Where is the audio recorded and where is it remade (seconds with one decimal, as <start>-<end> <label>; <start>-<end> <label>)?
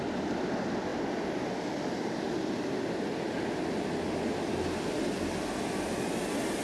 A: 0.0-6.6 recorded